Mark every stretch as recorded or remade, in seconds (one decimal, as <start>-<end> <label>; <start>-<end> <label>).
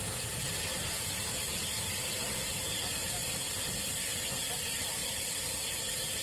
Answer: 0.0-5.0 recorded; 5.0-5.5 remade; 5.5-6.2 recorded